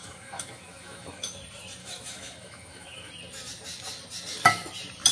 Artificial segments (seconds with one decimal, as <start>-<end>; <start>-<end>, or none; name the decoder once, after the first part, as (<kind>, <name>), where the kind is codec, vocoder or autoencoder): 0.0-1.3 (autoencoder, DAC-VAE); 1.8-3.1